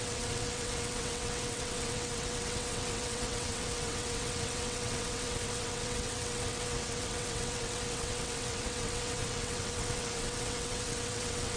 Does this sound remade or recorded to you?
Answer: remade